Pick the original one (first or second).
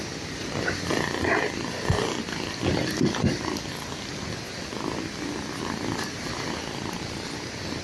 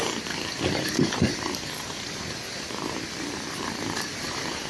first